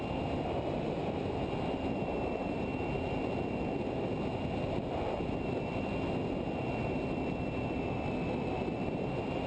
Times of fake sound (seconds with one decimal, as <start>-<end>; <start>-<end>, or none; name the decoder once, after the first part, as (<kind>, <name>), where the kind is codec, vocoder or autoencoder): none